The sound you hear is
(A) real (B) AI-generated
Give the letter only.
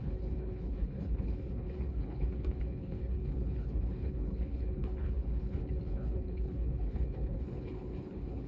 B